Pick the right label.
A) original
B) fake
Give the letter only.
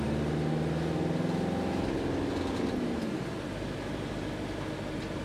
A